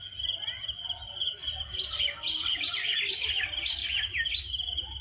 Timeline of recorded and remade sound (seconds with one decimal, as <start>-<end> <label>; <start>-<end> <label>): 0.0-5.0 recorded